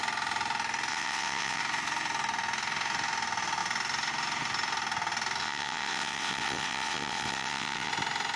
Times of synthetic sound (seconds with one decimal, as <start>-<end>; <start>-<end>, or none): 0.9-1.6; 5.4-7.9